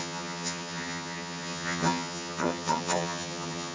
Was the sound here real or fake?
fake